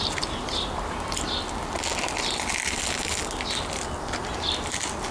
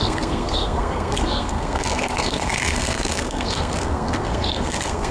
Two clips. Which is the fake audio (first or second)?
second